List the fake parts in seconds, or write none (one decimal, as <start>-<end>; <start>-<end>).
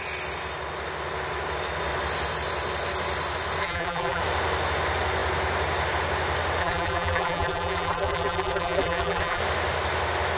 3.6-4.2; 6.6-9.4